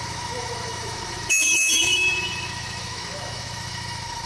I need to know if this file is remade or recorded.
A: remade